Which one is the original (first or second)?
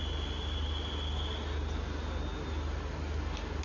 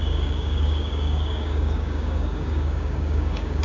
first